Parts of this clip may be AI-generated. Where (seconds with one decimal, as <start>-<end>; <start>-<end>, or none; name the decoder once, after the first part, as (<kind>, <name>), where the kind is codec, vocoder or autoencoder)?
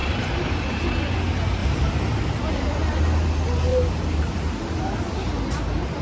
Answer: 0.0-1.0 (vocoder, BigVGAN v2); 1.6-2.5; 3.7-4.8